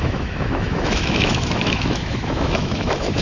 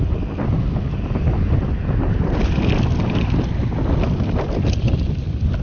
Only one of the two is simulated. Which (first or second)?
first